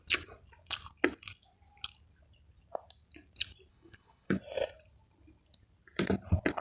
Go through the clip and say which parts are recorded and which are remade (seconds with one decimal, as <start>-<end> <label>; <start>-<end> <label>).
0.0-3.7 recorded; 3.7-4.4 remade; 4.4-6.6 recorded